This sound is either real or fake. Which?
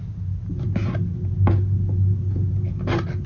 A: real